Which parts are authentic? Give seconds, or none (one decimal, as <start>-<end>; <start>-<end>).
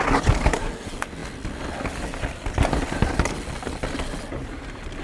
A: 0.0-5.0